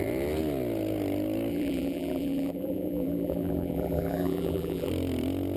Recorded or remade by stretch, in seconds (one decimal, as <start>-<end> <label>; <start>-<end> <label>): 0.0-1.5 recorded; 1.5-4.9 remade; 4.9-5.6 recorded